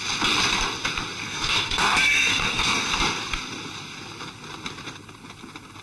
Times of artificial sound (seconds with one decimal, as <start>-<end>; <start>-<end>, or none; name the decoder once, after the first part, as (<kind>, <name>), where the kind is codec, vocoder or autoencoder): 1.2-2.9 (codec, SNAC)